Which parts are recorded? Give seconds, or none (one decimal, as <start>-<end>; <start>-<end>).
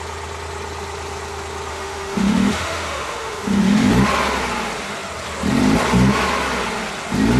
0.0-1.7; 3.9-7.4